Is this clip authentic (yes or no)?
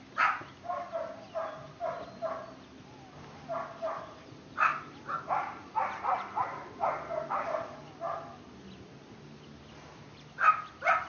yes